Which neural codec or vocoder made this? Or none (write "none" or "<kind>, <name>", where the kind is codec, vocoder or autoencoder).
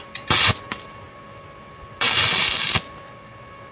none